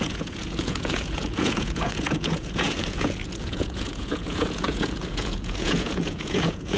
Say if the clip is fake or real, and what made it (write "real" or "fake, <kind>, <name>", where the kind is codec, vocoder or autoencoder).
fake, vocoder, Vocos